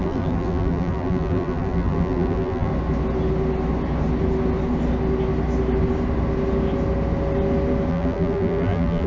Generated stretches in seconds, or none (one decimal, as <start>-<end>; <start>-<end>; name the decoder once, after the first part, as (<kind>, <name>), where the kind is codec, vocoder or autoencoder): 0.0-2.7 (vocoder, BigVGAN v2); 7.9-9.1